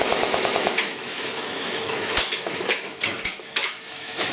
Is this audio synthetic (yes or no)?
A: yes